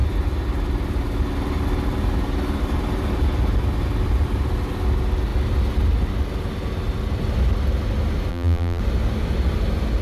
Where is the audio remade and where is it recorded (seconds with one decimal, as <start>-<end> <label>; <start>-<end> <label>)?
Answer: 0.0-8.3 recorded; 8.3-8.8 remade; 8.8-10.0 recorded